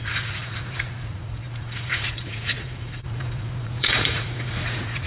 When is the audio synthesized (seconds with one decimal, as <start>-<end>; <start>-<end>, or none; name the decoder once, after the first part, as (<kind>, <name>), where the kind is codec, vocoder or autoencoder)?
0.0-5.1 (vocoder, Vocos)